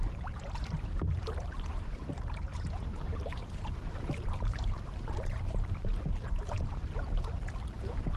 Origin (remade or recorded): remade